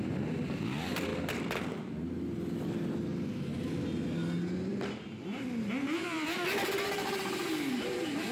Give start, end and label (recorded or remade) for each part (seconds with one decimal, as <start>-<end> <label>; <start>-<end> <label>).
0.0-1.1 remade; 1.1-4.7 recorded; 4.7-8.3 remade